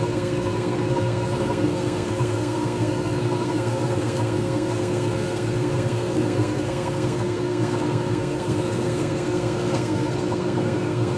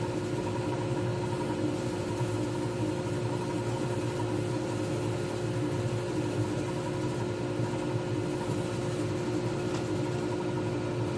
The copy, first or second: first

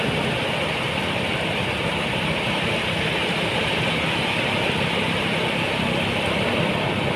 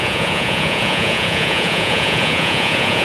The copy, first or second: second